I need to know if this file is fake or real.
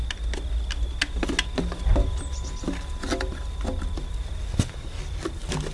real